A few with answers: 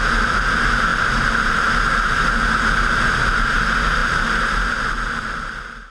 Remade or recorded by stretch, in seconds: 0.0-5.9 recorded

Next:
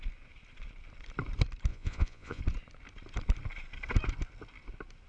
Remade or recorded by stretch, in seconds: 0.0-1.7 recorded; 1.7-2.4 remade; 2.4-5.1 recorded